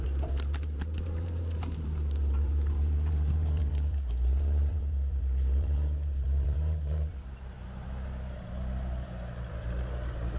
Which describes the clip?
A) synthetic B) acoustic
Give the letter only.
A